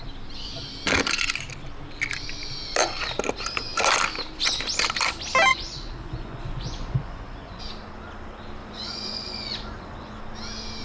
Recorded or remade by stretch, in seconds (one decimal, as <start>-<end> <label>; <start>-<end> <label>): 0.0-5.5 recorded; 5.5-7.6 remade; 7.6-8.6 recorded; 8.6-10.2 remade; 10.2-10.8 recorded